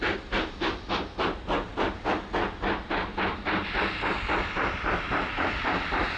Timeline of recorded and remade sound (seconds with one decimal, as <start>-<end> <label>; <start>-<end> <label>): 0.0-6.2 recorded